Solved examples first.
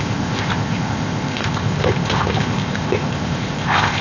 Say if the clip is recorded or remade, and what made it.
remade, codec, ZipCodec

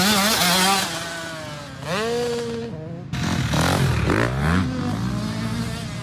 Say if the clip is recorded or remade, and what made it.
recorded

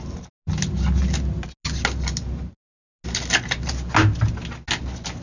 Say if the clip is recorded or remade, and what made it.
recorded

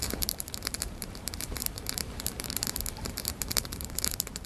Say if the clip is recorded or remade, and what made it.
remade, vocoder, BigVGAN v2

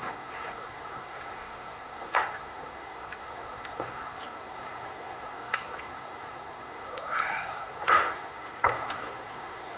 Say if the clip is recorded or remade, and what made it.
remade, codec, SNAC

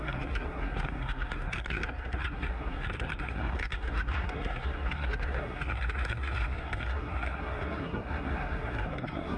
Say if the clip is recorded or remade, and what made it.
remade, codec, SNAC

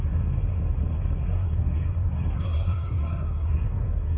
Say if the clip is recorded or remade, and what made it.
remade, codec, SNAC